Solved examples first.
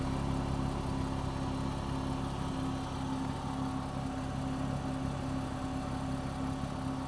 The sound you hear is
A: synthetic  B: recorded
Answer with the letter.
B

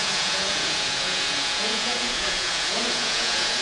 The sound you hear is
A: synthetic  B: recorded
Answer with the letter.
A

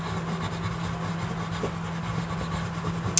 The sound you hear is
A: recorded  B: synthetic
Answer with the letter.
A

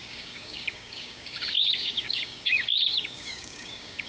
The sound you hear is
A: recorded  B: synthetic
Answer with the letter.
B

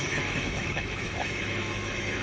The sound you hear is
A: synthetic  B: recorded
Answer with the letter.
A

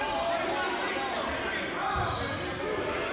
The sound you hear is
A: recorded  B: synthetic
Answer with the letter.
A